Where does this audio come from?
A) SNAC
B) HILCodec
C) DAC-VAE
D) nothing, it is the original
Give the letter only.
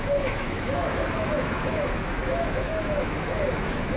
C